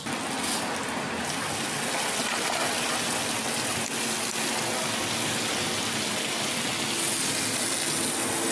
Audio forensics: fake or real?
real